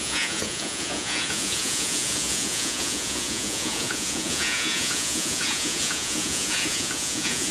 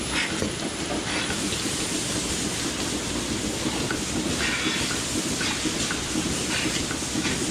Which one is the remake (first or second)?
first